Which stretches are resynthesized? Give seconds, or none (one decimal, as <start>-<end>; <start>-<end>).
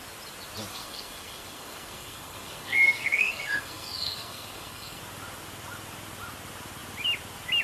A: 0.7-5.0